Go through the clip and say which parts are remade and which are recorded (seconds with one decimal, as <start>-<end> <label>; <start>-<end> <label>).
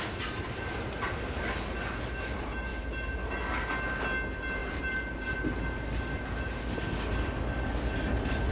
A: 0.0-8.5 recorded